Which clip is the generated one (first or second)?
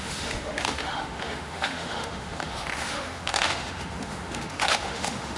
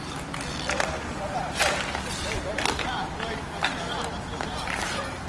first